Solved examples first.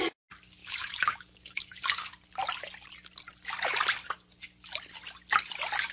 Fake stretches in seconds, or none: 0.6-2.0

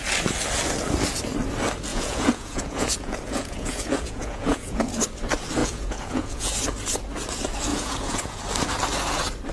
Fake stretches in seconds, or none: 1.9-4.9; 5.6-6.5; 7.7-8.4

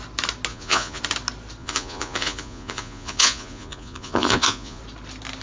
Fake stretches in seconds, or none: 0.5-1.0; 1.6-4.8